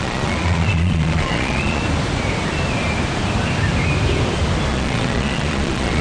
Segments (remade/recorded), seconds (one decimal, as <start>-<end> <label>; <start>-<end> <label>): 0.0-1.8 remade; 1.8-4.7 recorded; 4.7-6.0 remade